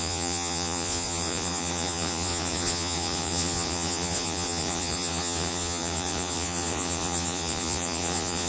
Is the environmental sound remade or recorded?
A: remade